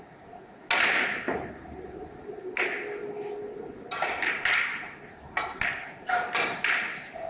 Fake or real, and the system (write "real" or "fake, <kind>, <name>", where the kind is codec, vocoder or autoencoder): real